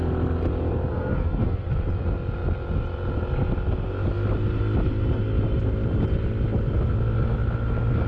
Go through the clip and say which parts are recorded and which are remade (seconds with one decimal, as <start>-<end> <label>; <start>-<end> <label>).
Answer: 0.0-0.9 recorded; 0.9-1.7 remade; 1.7-8.1 recorded